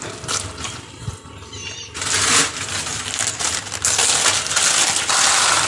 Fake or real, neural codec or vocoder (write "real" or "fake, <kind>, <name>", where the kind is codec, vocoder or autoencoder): real